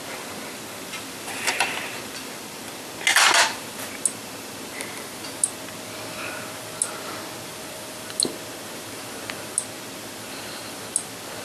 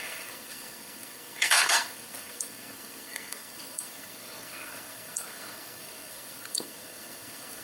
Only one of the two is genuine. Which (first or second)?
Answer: first